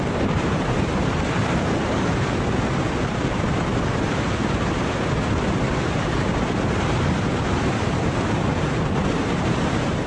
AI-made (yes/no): yes